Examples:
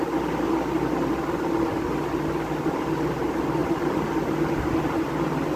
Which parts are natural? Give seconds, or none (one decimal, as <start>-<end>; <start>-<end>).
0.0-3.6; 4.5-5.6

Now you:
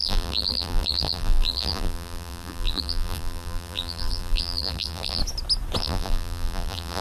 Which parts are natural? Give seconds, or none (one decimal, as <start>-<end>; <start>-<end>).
5.2-5.8

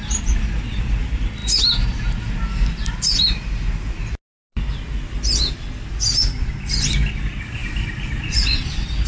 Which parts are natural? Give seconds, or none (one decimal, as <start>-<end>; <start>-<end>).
0.0-9.1

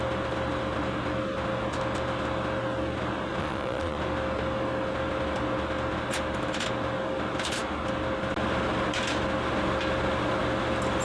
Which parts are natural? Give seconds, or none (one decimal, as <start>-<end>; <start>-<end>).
0.0-3.4; 4.0-11.0

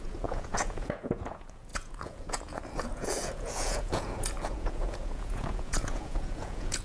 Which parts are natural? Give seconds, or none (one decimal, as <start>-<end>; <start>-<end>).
none

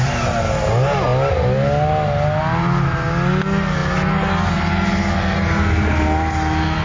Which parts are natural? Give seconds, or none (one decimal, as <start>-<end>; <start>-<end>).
0.0-6.8

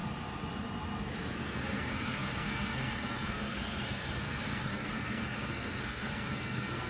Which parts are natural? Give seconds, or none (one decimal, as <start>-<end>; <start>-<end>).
0.0-1.4

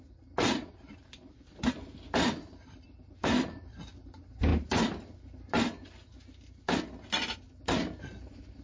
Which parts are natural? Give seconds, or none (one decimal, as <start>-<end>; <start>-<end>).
0.0-8.6